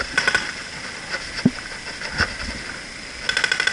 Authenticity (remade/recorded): recorded